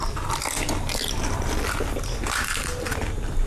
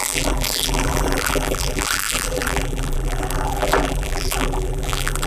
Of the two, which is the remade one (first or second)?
second